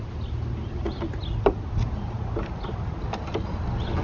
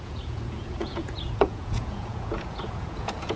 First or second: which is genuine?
first